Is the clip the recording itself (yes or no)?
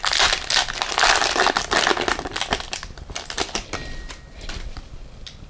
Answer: yes